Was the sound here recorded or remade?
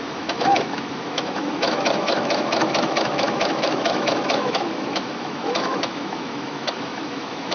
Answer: remade